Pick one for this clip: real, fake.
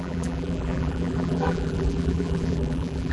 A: fake